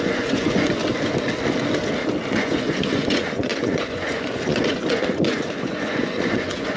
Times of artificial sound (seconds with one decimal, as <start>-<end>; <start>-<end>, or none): 0.0-0.8; 2.3-6.8